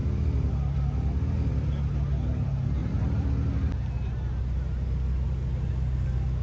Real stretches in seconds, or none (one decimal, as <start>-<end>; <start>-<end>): 0.0-2.8; 3.3-6.4